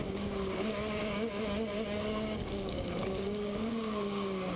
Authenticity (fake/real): fake